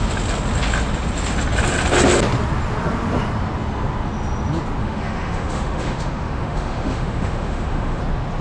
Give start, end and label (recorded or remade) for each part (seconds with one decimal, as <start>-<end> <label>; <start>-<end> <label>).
0.0-4.8 recorded; 4.8-8.0 remade; 8.0-8.4 recorded